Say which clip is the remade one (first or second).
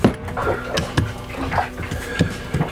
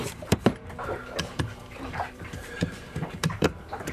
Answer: second